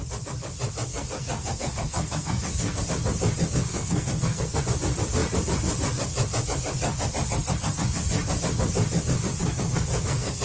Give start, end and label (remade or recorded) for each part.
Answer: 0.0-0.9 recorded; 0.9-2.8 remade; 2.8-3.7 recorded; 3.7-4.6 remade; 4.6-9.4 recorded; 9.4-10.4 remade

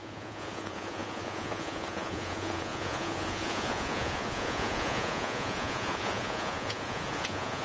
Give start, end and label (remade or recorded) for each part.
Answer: 0.0-7.6 remade

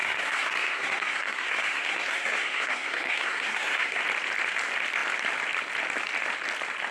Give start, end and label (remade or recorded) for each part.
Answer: 0.0-4.0 remade; 4.0-6.9 recorded

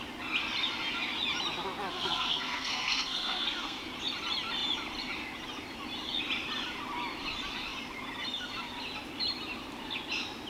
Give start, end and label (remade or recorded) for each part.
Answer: 0.0-1.9 recorded; 1.9-3.8 remade; 3.8-10.5 recorded

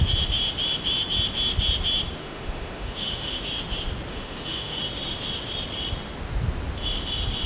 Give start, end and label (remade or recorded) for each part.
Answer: 0.0-2.2 recorded; 2.2-3.4 remade; 3.4-4.1 recorded; 4.1-4.8 remade; 4.8-7.5 recorded

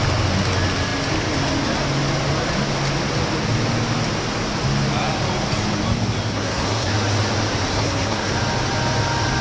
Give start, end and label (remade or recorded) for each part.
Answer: 0.0-6.3 recorded; 6.3-6.9 remade; 6.9-7.7 recorded; 7.7-8.3 remade; 8.3-9.4 recorded

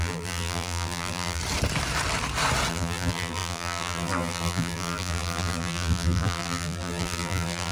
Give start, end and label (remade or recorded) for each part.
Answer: 0.0-1.4 remade; 1.4-2.7 recorded; 2.7-7.7 remade

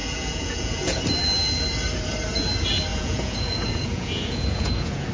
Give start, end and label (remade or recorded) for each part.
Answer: 0.0-1.0 remade; 1.0-2.9 recorded; 2.9-5.1 remade